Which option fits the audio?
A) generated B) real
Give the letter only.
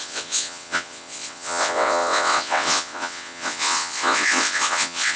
A